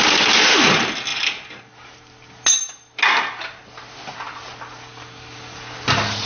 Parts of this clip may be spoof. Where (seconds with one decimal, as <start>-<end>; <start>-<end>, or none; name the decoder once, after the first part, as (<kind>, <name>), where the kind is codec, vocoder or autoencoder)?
1.1-2.4 (vocoder, BigVGAN v2)

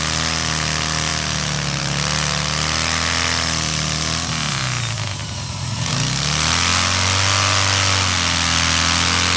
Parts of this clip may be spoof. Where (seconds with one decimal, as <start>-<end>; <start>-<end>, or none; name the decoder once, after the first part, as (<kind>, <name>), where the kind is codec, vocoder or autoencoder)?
5.2-5.9 (vocoder, Vocos)

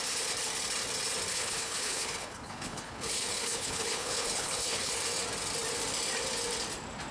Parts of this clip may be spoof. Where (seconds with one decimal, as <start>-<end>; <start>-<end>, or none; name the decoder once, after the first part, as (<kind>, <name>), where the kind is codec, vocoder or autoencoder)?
1.3-4.9 (codec, HILCodec)